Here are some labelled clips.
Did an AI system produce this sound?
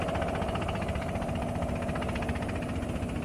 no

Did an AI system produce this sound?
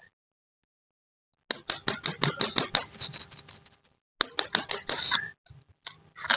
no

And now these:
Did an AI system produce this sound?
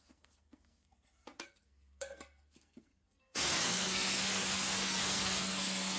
yes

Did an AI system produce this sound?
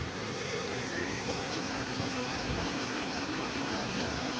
yes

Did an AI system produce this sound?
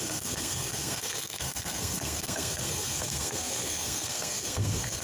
yes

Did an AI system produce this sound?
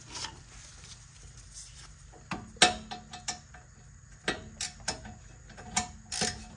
no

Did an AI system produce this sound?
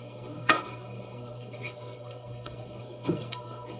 yes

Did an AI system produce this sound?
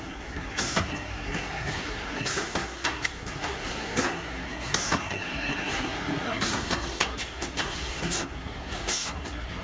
yes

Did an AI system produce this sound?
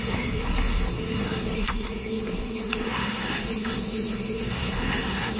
yes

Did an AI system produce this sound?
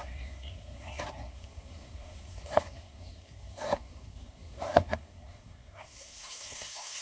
yes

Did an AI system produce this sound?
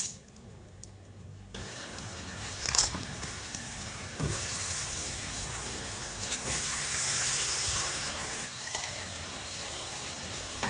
yes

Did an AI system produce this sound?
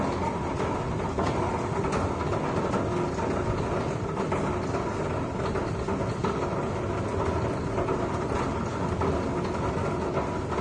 no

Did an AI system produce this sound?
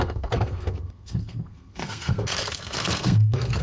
yes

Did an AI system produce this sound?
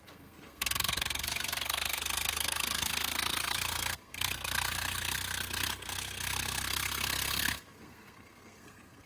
yes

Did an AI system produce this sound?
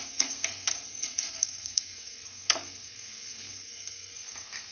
yes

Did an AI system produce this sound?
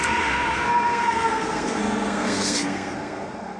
yes